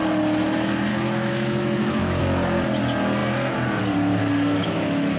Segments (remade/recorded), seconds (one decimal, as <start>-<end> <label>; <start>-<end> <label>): 0.0-0.9 recorded; 0.9-2.2 remade; 2.2-4.6 recorded; 4.6-5.2 remade